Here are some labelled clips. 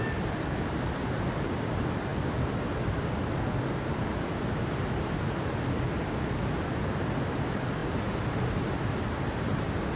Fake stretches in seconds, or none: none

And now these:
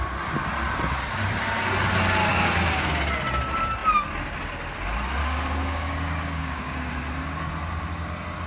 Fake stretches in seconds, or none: 2.3-2.9 (codec, DAC); 5.2-6.9

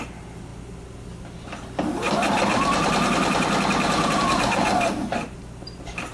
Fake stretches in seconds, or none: none

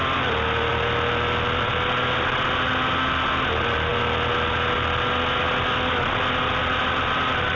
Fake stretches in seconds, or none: none

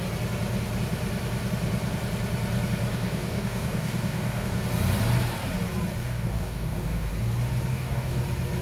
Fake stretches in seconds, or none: 2.9-4.6 (codec, DAC); 6.0-7.1; 7.7-8.2